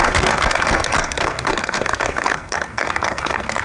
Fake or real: fake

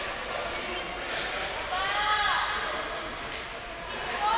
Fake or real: real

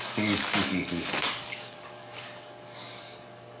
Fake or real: fake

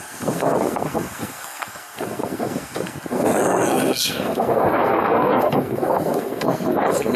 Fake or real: fake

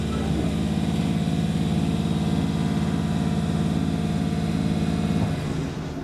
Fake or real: real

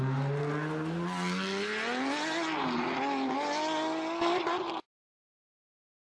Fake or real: real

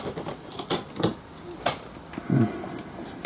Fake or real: real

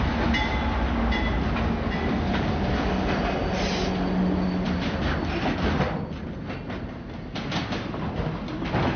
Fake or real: real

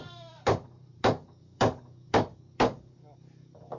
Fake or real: fake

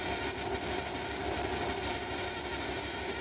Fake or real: real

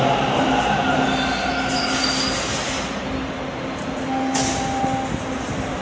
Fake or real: real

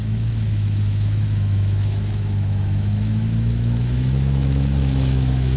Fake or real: fake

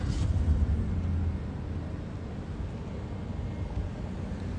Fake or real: real